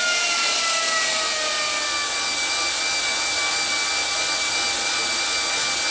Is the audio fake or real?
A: real